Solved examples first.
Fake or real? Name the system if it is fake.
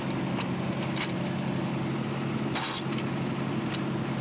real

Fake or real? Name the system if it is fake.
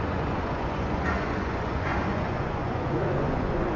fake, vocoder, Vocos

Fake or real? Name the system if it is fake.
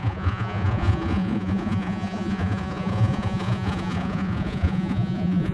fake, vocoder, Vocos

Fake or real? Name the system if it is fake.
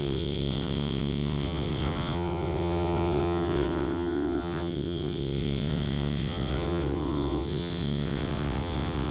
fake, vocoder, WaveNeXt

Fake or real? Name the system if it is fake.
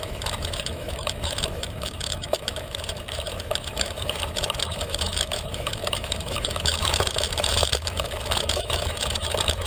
fake, autoencoder, DAC-VAE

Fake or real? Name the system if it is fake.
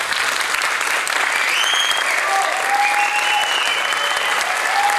real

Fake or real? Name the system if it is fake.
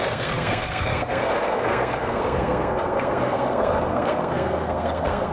fake, codec, SNAC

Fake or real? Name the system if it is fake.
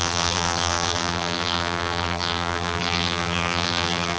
fake, vocoder, BigVGAN v2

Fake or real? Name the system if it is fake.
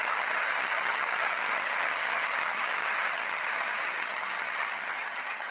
fake, vocoder, HiFi-GAN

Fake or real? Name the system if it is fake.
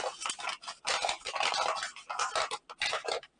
real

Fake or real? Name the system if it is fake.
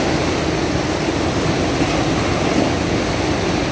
real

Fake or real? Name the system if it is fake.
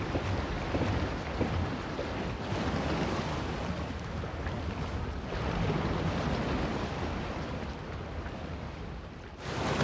real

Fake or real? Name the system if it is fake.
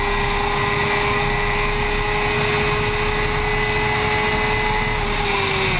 real